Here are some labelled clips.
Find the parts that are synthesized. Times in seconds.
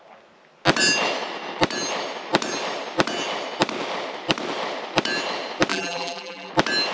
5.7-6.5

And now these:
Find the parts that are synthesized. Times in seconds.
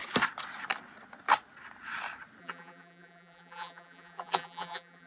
2.4-5.1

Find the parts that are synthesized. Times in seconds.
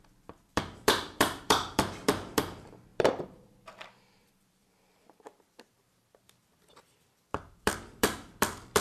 0.0-8.8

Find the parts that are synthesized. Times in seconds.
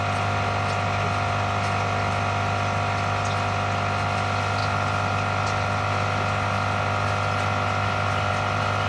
none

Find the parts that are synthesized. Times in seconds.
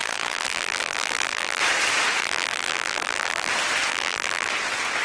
0.0-1.6; 2.2-3.5; 3.9-4.5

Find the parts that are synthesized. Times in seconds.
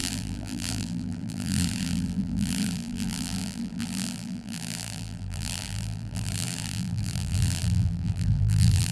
0.0-8.9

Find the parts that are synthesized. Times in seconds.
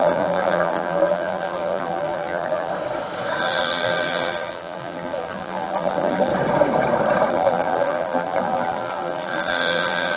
0.0-2.7; 3.4-6.3; 7.3-10.2